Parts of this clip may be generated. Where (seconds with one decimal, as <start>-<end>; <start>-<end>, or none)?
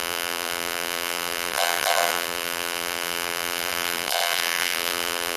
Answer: 0.0-5.4